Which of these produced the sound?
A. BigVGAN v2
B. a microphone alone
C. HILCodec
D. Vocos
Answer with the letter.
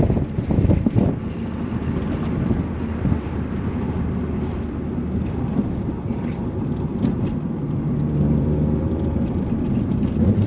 A